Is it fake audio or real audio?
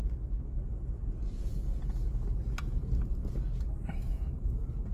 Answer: real